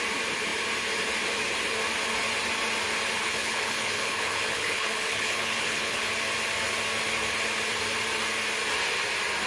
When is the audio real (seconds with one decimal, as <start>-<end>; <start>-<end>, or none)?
0.0-3.2; 6.1-9.5